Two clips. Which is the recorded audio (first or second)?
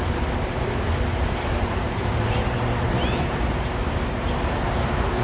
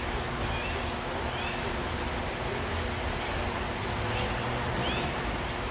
second